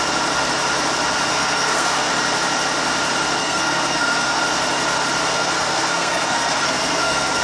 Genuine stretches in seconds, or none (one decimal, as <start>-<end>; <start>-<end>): 0.0-1.3; 2.1-3.4; 4.4-5.3